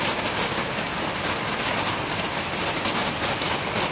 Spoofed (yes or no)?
no